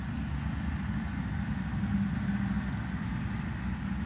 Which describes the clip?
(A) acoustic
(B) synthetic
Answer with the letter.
A